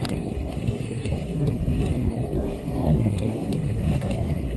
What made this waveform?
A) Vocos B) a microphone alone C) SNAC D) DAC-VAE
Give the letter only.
C